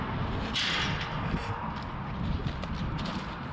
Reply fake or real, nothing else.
real